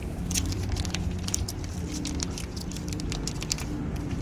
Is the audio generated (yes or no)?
yes